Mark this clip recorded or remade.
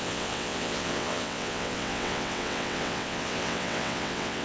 remade